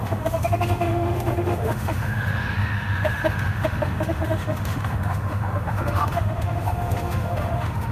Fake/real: fake